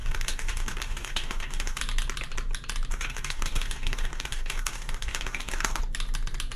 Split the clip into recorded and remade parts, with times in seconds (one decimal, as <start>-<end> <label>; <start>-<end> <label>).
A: 0.0-1.8 remade; 1.8-2.9 recorded; 2.9-5.8 remade; 5.8-6.6 recorded